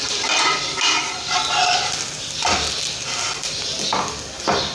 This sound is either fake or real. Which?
real